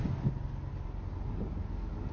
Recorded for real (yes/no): yes